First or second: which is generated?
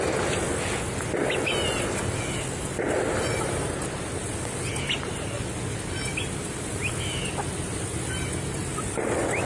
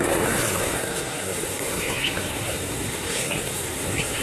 second